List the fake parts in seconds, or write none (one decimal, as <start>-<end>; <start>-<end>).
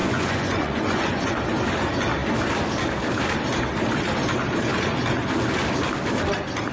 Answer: 0.0-1.3